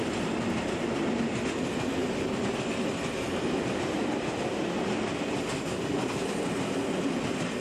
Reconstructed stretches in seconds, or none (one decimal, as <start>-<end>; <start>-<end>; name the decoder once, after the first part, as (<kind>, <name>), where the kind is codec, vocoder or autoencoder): none